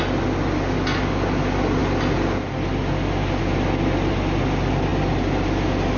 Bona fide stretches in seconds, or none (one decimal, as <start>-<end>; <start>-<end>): 0.0-6.0